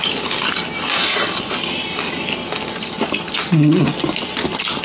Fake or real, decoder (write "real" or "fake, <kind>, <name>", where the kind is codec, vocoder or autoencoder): real